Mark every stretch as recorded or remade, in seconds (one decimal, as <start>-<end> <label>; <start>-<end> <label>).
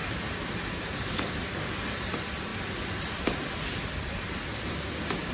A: 0.0-2.5 remade; 2.5-5.3 recorded